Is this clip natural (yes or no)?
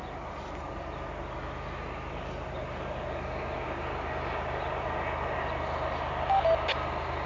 yes